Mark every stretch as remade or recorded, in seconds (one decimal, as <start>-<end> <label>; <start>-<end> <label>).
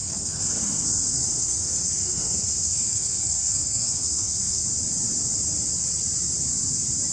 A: 0.0-4.6 remade; 4.6-7.1 recorded